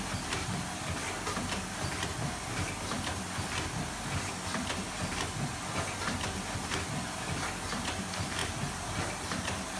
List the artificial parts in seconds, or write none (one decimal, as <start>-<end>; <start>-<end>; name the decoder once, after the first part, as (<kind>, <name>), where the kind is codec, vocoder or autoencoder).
none